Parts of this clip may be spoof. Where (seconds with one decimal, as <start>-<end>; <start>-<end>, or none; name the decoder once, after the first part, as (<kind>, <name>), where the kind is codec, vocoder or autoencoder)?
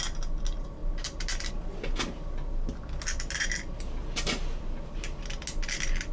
none